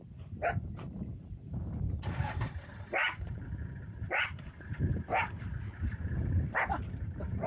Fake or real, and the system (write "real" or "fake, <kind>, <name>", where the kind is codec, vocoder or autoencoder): fake, vocoder, BigVGAN v2